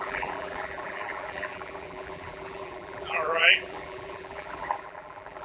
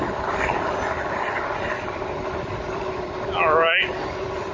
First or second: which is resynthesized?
first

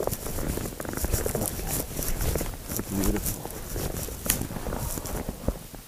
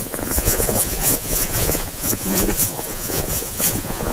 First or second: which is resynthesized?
second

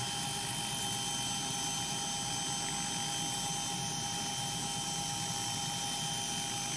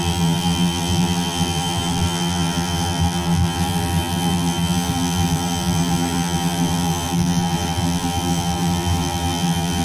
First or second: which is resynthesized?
second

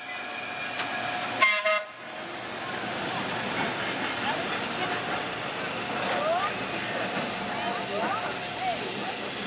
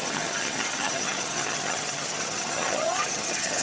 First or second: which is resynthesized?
second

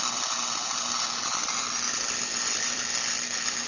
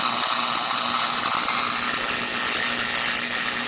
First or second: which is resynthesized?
first